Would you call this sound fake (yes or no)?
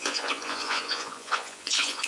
yes